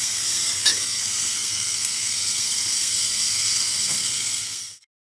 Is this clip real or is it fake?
fake